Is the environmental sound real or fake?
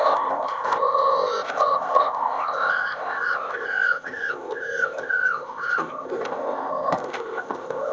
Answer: fake